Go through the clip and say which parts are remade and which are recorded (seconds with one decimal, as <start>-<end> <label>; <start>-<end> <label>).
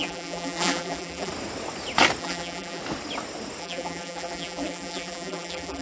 0.0-1.3 remade; 1.3-2.2 recorded; 2.2-2.8 remade; 2.8-3.6 recorded; 3.6-5.8 remade